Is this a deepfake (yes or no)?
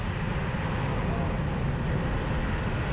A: no